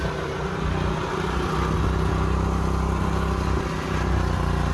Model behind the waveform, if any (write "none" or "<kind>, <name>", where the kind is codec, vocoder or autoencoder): none